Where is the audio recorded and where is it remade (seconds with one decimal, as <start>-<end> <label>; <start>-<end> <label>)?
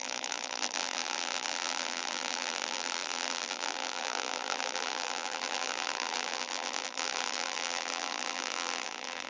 0.0-9.3 remade